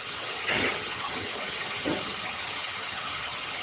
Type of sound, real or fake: fake